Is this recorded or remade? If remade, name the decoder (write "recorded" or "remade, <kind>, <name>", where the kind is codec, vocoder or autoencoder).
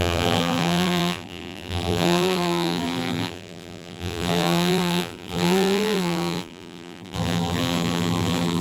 remade, vocoder, BigVGAN v2